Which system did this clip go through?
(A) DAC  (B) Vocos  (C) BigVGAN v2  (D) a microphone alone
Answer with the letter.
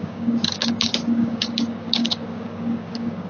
A